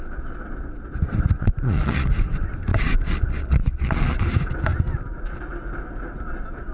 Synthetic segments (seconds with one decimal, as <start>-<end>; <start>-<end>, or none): 1.4-2.1; 2.7-4.2